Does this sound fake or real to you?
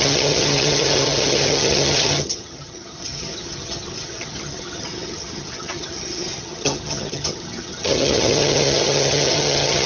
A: fake